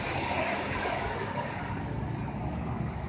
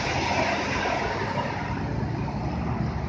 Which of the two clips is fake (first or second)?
first